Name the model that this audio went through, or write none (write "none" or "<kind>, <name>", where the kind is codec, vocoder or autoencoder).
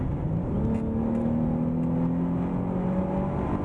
none